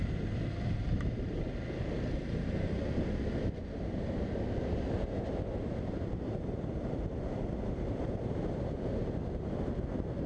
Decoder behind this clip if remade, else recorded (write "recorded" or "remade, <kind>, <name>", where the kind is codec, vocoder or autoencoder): remade, vocoder, BigVGAN v2